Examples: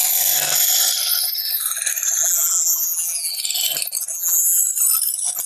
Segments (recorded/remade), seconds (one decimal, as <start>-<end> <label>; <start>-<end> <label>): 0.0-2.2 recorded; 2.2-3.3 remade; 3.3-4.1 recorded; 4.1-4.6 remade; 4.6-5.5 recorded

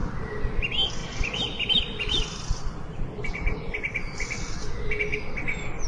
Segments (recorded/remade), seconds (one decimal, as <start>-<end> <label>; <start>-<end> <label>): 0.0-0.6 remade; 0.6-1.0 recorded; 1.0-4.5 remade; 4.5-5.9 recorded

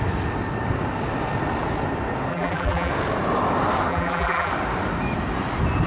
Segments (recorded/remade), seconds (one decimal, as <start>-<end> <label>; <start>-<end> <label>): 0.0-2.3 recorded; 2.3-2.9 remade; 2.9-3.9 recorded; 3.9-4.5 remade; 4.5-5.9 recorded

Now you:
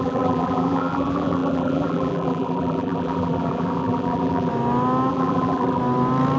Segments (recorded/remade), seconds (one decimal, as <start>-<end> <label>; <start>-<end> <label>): 0.0-4.5 remade; 4.5-5.1 recorded; 5.1-5.8 remade; 5.8-6.4 recorded